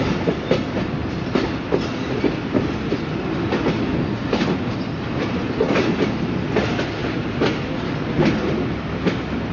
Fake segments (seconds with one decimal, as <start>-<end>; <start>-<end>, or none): none